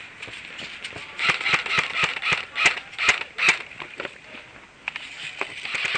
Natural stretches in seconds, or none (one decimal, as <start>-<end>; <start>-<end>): 0.0-6.0